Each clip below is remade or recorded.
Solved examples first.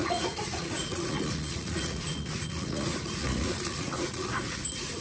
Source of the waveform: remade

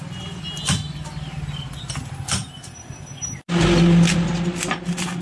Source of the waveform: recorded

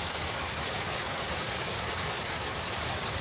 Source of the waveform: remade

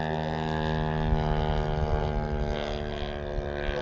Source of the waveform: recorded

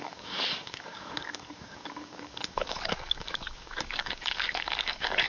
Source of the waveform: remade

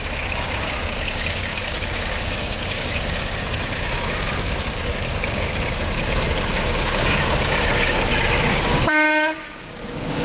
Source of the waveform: remade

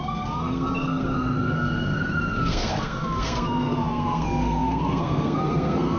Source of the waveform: remade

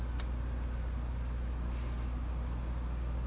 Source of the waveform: recorded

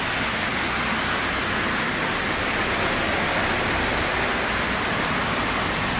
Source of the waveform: recorded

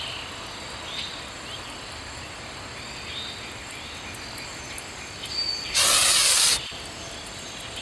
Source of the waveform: recorded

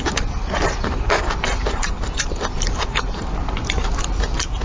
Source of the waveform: remade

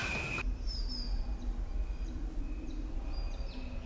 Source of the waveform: recorded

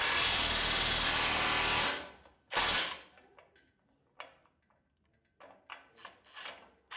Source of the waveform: recorded